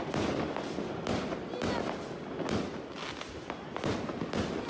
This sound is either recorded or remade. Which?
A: recorded